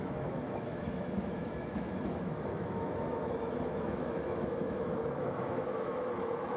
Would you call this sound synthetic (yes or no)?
yes